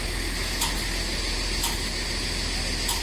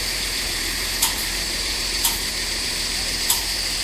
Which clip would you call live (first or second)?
first